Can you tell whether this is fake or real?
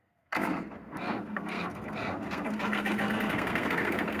fake